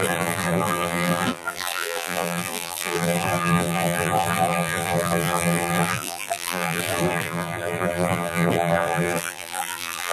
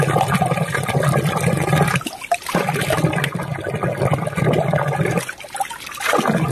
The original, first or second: second